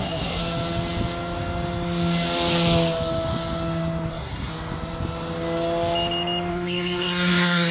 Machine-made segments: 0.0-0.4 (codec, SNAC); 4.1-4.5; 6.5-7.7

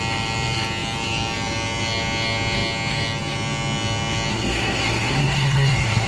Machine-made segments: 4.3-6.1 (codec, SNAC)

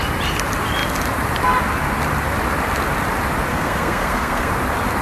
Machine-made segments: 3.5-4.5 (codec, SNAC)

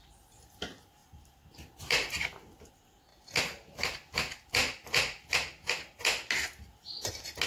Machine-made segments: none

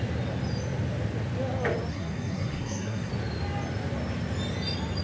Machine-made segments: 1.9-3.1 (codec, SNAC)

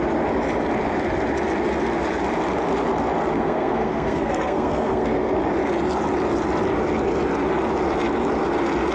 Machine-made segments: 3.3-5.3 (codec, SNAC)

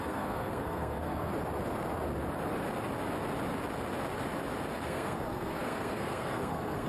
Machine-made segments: 0.0-1.3 (codec, SNAC); 4.7-6.9

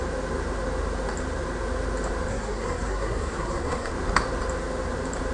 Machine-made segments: 2.3-3.9 (codec, SNAC)